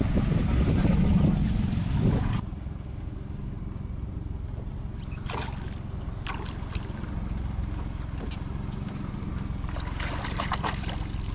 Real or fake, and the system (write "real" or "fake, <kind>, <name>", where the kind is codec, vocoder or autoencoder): real